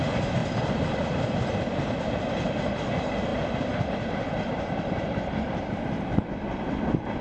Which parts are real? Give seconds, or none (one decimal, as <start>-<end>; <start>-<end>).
0.0-0.4; 1.1-3.3; 5.7-7.2